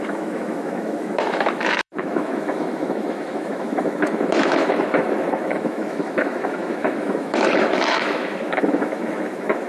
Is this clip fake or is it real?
fake